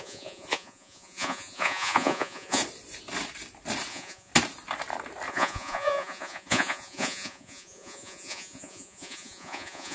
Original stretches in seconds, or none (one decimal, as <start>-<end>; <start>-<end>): 2.6-3.9; 4.3-5.3